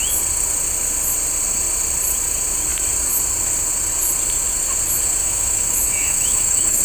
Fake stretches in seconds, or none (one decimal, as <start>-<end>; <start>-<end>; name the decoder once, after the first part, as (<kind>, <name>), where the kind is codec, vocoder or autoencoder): 5.2-6.8 (autoencoder, DAC-VAE)

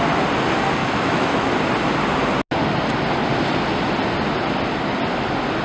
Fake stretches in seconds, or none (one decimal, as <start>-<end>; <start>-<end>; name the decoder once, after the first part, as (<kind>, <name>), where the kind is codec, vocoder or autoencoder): 0.8-1.5 (autoencoder, DAC-VAE)

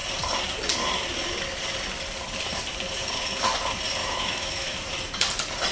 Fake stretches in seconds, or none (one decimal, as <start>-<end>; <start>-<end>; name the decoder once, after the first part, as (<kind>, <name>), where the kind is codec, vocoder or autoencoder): 4.0-4.9 (autoencoder, DAC-VAE)

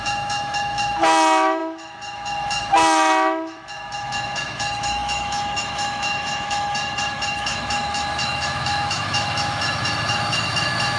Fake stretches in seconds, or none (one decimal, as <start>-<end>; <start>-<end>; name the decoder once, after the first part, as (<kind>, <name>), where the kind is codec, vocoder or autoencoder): 0.0-11.0 (autoencoder, DAC-VAE)

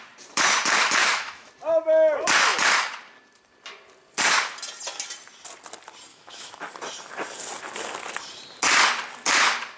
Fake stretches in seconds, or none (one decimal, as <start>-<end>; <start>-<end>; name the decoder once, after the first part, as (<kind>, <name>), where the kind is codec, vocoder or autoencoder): 1.0-1.5 (autoencoder, DAC-VAE); 6.1-6.7